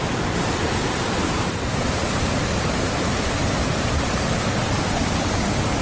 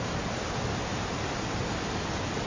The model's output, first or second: first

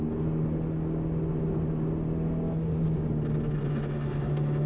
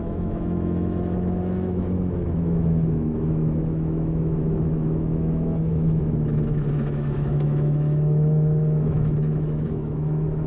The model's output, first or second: second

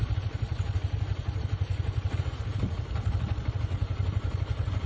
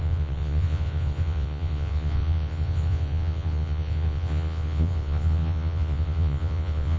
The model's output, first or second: second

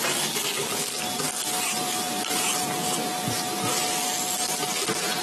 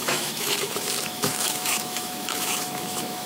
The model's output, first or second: second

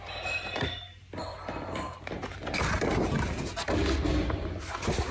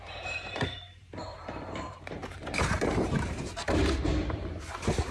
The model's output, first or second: second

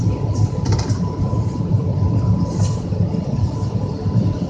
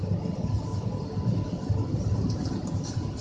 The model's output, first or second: first